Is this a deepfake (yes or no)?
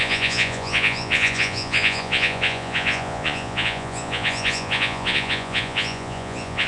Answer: yes